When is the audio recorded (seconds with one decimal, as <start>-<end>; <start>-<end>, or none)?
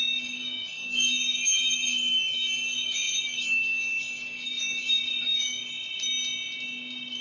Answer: 5.6-7.2